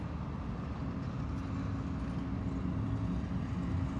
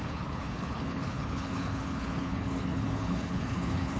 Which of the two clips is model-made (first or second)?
second